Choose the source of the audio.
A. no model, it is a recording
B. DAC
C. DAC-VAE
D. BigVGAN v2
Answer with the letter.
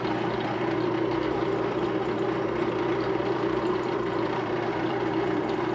D